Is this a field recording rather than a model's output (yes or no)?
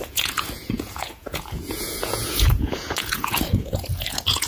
no